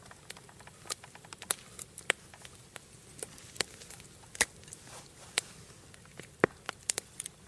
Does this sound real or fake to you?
real